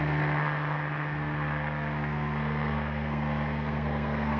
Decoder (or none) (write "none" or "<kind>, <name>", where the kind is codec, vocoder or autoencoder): codec, SNAC